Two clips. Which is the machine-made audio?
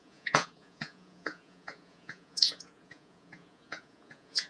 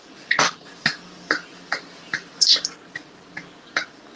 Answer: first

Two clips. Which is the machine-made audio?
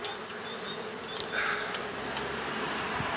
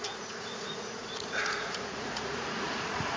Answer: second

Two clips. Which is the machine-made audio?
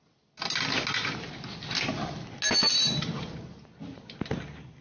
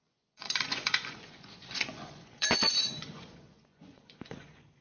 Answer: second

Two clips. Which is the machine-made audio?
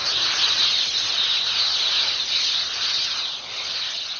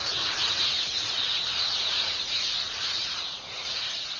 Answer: second